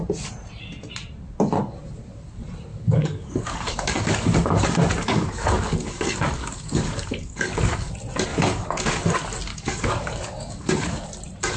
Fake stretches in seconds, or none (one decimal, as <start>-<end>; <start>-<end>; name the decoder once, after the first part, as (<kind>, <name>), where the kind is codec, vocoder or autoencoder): 2.7-7.9 (codec, DAC); 8.3-9.0; 9.5-11.1